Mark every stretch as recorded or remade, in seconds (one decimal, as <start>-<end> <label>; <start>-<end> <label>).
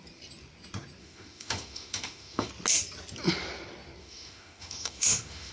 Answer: 0.0-1.0 recorded; 1.0-2.5 remade; 2.5-4.0 recorded; 4.0-5.5 remade